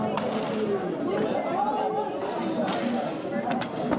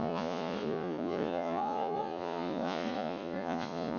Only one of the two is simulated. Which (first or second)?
second